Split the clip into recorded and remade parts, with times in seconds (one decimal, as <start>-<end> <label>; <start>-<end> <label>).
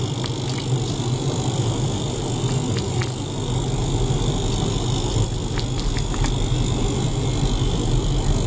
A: 0.0-8.5 recorded